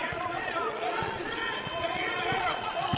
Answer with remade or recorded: remade